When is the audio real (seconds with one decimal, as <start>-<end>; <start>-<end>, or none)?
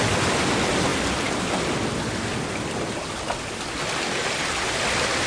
0.0-5.3